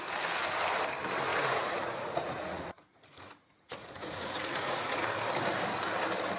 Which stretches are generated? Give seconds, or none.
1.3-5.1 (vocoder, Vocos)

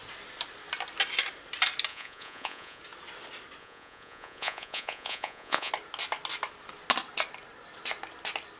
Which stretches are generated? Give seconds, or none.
1.9-2.8 (vocoder, Vocos); 3.6-5.7

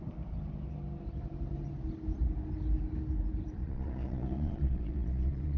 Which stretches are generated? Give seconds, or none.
3.6-5.6 (vocoder, Vocos)

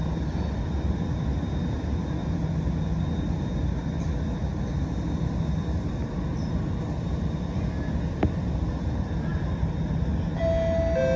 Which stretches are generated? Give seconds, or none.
none

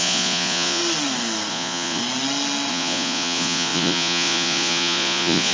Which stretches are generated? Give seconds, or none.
0.0-0.8 (vocoder, Vocos); 1.5-2.0; 2.7-5.5